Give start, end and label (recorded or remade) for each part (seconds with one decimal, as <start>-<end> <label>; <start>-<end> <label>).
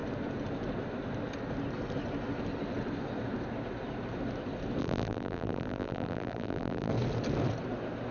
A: 0.0-4.8 recorded; 4.8-6.9 remade; 6.9-8.1 recorded